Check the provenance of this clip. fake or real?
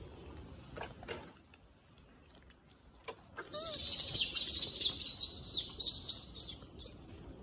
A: real